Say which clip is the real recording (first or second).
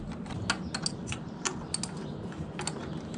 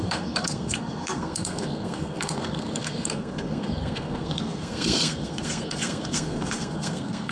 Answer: first